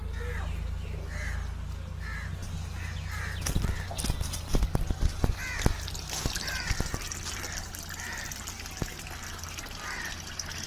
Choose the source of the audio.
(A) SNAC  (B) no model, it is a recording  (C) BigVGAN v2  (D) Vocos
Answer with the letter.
B